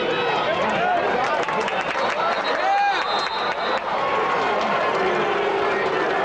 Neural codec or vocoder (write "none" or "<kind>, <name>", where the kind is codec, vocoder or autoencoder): none